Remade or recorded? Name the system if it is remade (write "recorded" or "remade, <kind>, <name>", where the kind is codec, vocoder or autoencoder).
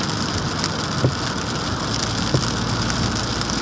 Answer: recorded